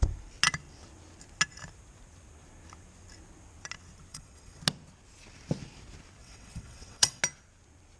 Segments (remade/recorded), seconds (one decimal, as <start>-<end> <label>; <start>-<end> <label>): 0.0-4.1 recorded; 4.1-4.6 remade; 4.6-6.2 recorded; 6.2-7.2 remade; 7.2-8.0 recorded